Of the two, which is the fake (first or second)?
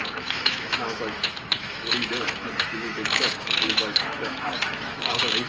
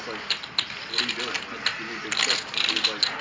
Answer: first